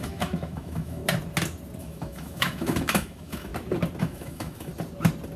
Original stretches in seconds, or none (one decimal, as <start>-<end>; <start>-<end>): 1.0-1.8; 3.5-4.0; 4.7-5.4